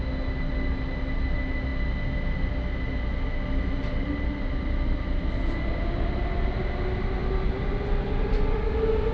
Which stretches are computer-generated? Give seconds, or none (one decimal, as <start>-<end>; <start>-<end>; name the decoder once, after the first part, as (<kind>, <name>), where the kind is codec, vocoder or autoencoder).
none